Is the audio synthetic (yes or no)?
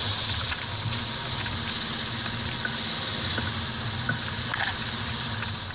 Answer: no